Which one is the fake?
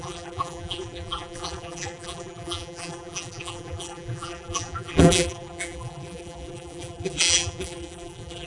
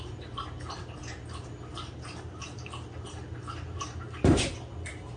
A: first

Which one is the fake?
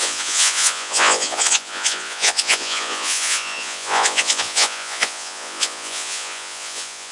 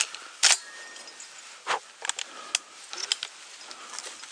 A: first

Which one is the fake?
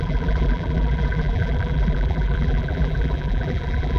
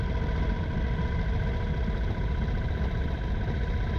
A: first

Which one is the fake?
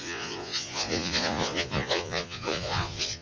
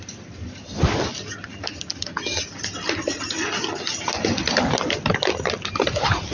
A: first